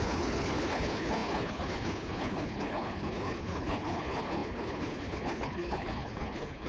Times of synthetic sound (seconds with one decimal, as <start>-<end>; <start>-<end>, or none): 0.0-6.7